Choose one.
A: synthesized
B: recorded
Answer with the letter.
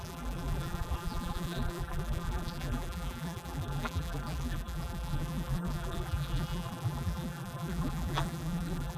A